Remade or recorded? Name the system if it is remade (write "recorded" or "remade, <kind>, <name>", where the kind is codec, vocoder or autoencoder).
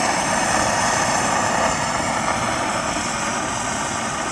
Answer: recorded